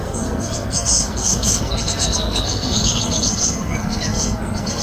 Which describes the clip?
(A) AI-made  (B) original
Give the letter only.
A